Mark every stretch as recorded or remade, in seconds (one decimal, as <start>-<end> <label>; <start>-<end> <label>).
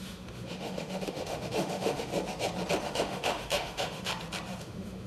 0.0-2.1 remade; 2.1-2.8 recorded; 2.8-4.1 remade; 4.1-4.6 recorded; 4.6-5.1 remade